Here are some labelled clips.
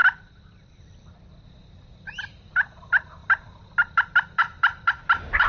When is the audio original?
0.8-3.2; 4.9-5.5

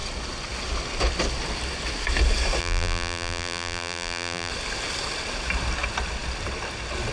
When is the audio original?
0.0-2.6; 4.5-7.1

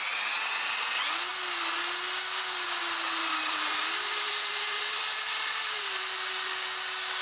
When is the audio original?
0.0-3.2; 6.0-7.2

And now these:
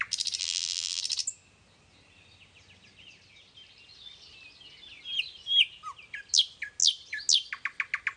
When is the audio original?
0.0-0.4; 1.0-8.2

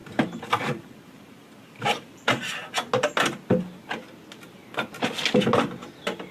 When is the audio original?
2.5-6.3

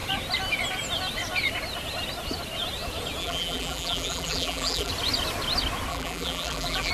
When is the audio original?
0.0-3.2; 4.9-5.9

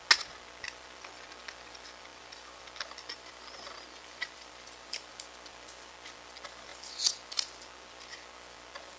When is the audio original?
0.0-2.1; 5.1-9.0